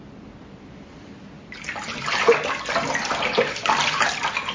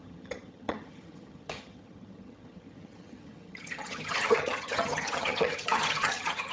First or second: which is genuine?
first